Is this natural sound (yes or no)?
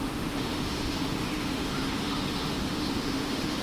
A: no